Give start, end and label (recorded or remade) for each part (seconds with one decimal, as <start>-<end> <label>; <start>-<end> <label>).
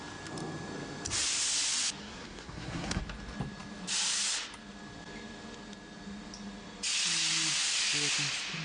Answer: 0.0-2.0 recorded; 2.0-3.0 remade; 3.0-8.6 recorded